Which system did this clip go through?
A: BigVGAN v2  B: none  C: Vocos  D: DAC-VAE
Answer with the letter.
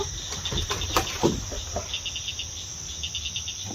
B